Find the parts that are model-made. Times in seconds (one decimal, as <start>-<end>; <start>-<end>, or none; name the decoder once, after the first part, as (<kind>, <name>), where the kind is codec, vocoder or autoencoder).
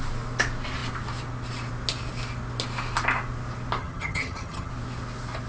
3.8-4.7 (vocoder, HiFi-GAN)